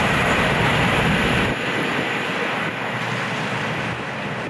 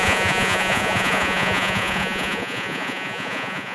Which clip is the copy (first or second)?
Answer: second